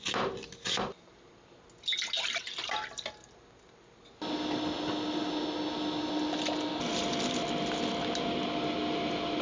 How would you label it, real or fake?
real